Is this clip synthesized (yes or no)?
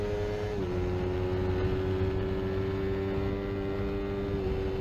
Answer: no